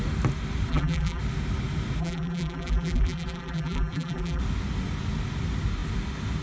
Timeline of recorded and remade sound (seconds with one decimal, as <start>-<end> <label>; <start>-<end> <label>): 0.0-0.7 recorded; 0.7-1.2 remade; 1.2-2.0 recorded; 2.0-4.4 remade; 4.4-6.4 recorded